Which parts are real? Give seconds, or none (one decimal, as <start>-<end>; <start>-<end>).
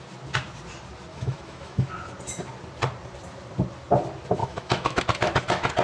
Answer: 0.0-1.1; 1.9-4.4; 5.0-5.8